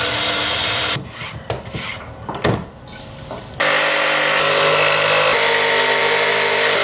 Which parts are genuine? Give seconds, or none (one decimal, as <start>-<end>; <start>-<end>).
0.0-6.8